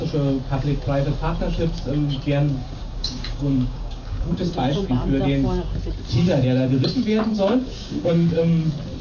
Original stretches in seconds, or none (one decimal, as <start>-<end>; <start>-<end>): 0.0-2.6; 4.9-7.3; 8.1-9.0